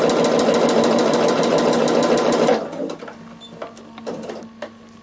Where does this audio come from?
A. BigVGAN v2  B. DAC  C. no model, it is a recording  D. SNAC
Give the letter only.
C